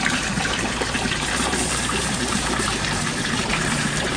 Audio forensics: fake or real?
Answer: fake